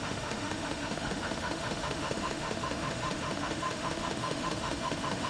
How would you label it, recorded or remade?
remade